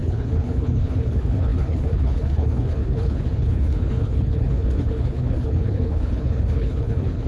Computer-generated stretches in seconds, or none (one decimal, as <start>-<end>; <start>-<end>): 0.0-7.3